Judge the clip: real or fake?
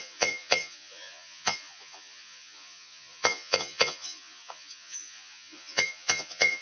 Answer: fake